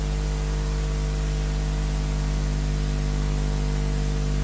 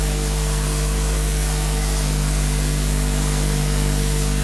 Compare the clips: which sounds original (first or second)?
first